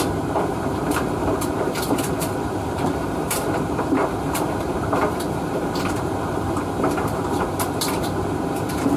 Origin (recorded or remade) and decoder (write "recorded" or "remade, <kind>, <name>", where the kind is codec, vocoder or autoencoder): remade, vocoder, BigVGAN v2